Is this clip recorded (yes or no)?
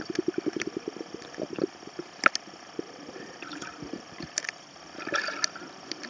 yes